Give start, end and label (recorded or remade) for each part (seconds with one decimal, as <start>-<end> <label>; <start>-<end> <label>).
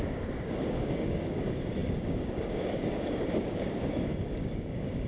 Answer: 0.0-5.1 remade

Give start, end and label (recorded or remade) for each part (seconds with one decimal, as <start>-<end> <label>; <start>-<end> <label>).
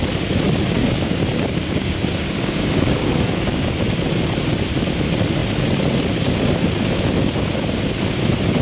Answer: 0.0-0.8 recorded; 0.8-3.6 remade; 3.6-8.6 recorded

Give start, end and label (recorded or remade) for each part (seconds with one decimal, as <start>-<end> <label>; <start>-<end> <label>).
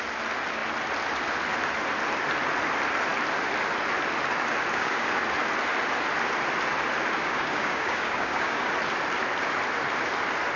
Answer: 0.0-4.7 recorded; 4.7-5.2 remade; 5.2-7.2 recorded; 7.2-8.7 remade; 8.7-10.6 recorded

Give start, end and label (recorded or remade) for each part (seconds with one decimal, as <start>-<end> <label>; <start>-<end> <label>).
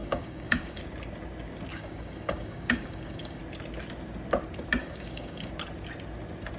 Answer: 0.0-0.8 remade; 0.8-1.7 recorded; 1.7-3.4 remade; 3.4-4.8 recorded; 4.8-5.5 remade; 5.5-6.6 recorded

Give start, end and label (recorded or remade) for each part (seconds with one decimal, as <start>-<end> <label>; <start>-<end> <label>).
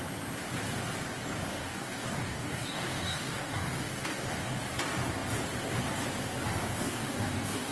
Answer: 0.0-1.5 recorded; 1.5-4.6 remade; 4.6-6.6 recorded; 6.6-7.7 remade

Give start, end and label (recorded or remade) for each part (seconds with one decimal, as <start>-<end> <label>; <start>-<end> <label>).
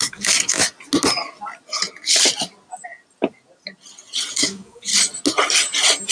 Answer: 0.0-0.6 remade; 0.6-4.3 recorded; 4.3-4.9 remade; 4.9-6.1 recorded